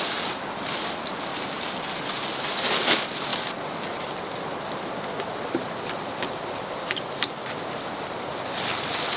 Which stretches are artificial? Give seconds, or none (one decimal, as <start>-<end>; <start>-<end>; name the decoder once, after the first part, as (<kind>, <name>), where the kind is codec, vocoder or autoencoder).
none